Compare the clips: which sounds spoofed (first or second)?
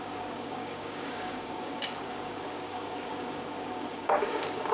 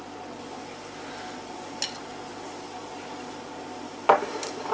first